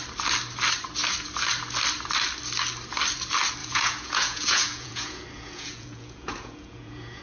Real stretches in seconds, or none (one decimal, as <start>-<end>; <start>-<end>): 0.0-3.6